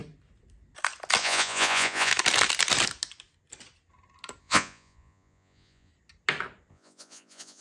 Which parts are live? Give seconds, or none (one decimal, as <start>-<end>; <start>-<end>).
0.0-1.2; 2.1-4.4; 5.9-6.7